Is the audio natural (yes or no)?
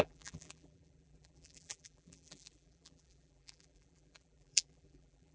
no